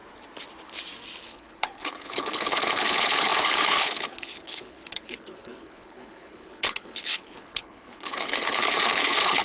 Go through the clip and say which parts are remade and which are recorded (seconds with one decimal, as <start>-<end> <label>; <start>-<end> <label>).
0.0-1.2 recorded; 1.2-9.4 remade